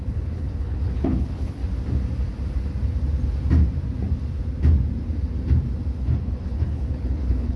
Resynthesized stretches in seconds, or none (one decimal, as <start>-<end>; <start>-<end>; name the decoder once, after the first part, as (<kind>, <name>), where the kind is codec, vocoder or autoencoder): 0.0-1.6 (codec, HILCodec); 6.0-7.6

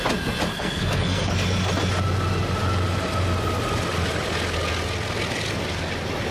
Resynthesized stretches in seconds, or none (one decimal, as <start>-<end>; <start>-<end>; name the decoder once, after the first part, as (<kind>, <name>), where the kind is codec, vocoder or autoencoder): 0.5-1.3 (codec, SNAC)

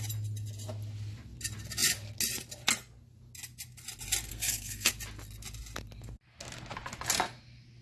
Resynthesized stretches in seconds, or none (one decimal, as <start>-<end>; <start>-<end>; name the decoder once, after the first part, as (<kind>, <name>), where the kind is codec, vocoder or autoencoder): 4.3-4.9 (codec, SNAC)

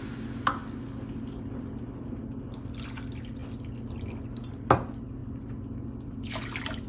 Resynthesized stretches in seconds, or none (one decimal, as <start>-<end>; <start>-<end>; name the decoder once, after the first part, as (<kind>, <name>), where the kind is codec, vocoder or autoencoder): none

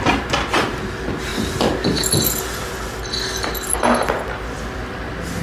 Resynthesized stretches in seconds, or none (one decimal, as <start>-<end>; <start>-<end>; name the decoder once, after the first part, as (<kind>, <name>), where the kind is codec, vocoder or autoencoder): none

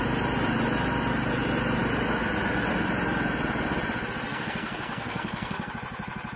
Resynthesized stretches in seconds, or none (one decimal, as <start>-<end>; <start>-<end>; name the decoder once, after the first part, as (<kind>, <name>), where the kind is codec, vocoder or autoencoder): 4.3-5.7 (codec, SNAC)